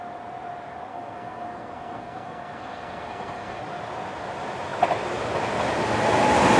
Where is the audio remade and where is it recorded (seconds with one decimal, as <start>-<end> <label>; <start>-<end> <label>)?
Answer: 0.0-0.9 recorded; 0.9-3.6 remade; 3.6-6.6 recorded